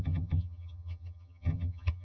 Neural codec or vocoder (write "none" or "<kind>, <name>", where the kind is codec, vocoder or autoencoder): vocoder, HiFi-GAN